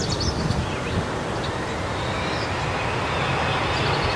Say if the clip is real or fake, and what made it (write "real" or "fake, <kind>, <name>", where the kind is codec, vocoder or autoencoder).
real